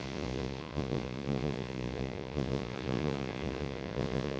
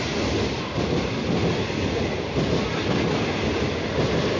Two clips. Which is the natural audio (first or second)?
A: second